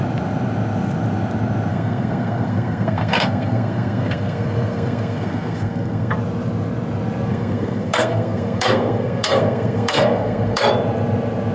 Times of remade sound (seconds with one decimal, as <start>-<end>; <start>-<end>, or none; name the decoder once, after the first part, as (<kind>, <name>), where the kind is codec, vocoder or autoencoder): 1.7-6.1 (codec, SNAC); 7.3-10.7

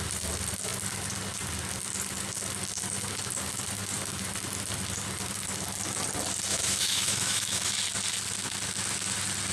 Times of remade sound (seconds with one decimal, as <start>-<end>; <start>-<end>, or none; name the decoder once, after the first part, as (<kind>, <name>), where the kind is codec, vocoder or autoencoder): 6.5-7.8 (autoencoder, DAC-VAE)